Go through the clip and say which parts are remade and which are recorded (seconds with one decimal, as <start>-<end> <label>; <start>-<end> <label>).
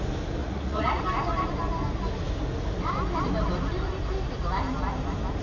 0.0-0.4 recorded; 0.4-1.0 remade; 1.0-5.4 recorded